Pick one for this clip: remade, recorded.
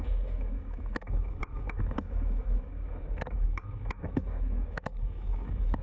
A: remade